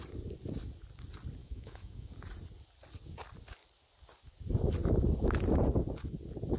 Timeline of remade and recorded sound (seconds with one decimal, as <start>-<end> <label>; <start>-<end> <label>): 0.0-1.4 recorded; 1.4-2.1 remade; 2.1-6.6 recorded